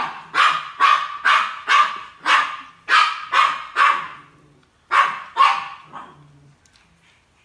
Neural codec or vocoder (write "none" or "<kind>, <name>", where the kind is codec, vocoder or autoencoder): none